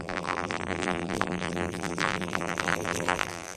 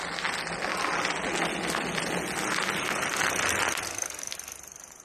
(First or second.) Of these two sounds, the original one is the second